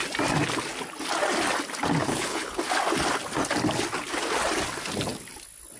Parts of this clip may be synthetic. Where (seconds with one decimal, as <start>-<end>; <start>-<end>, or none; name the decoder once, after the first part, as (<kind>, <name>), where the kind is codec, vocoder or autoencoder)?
2.0-2.6 (codec, HILCodec)